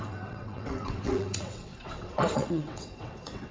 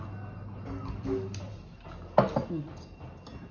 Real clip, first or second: second